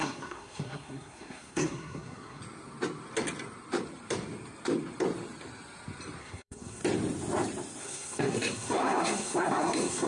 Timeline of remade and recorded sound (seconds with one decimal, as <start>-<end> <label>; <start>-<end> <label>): 0.0-2.4 remade; 2.4-6.2 recorded; 6.2-6.8 remade; 6.8-7.8 recorded; 7.8-10.1 remade